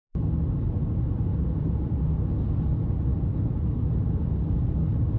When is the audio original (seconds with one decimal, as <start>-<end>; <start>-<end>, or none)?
0.0-1.3; 2.2-5.2